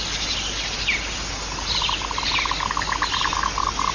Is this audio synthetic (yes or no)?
no